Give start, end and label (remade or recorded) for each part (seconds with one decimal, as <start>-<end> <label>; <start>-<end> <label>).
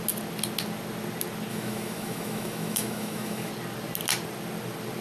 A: 0.0-1.5 recorded; 1.5-3.5 remade; 3.5-5.0 recorded